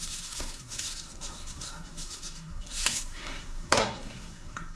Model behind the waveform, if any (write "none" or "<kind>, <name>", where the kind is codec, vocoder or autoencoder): codec, SNAC